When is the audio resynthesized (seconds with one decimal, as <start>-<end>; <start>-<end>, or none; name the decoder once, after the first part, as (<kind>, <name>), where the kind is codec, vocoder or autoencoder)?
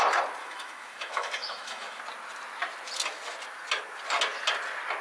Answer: 0.4-2.0 (autoencoder, DAC-VAE)